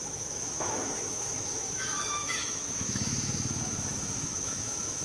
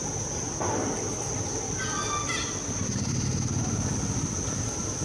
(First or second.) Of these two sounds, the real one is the second